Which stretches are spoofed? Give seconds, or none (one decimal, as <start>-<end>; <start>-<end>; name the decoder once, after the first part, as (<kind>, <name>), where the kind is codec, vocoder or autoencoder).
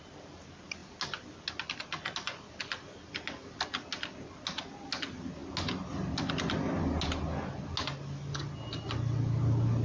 none